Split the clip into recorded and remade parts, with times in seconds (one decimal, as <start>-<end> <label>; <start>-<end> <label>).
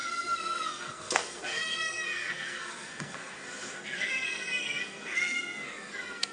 0.0-6.3 remade